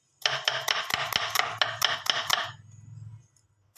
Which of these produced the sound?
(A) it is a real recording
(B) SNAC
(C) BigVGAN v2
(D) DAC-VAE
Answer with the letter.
A